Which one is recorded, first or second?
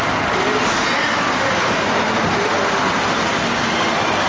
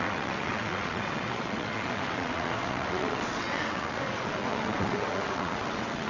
first